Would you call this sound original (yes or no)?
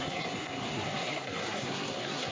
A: no